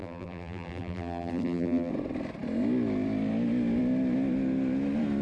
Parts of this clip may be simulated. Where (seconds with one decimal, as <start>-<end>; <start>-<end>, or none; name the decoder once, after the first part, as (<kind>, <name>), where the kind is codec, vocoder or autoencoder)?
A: 0.0-1.9 (vocoder, BigVGAN v2)